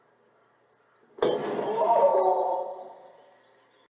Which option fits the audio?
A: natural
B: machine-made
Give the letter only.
A